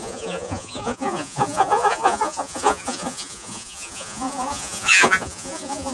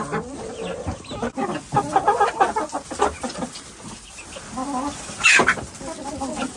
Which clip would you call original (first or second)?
second